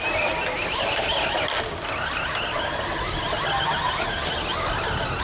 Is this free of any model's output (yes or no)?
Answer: yes